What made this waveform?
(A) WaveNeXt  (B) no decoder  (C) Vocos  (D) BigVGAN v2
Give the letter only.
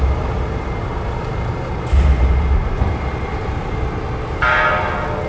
B